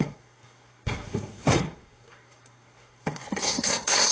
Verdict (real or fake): fake